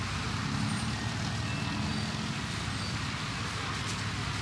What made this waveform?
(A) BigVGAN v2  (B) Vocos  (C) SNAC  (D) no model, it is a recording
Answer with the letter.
D